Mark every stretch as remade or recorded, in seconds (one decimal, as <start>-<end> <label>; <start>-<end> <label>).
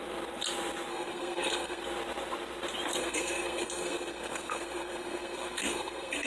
0.0-0.9 recorded; 0.9-1.8 remade; 1.8-3.0 recorded; 3.0-6.3 remade